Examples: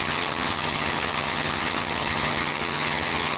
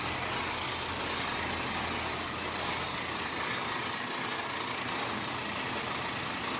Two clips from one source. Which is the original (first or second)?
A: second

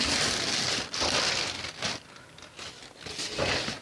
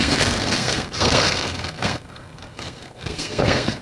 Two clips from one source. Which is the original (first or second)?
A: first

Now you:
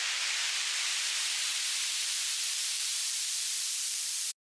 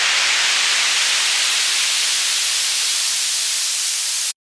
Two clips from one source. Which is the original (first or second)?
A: second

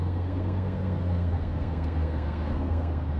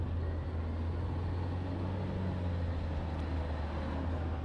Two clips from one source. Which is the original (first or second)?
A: second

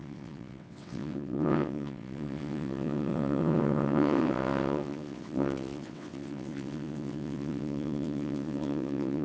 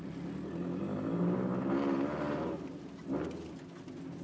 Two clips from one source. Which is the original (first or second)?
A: second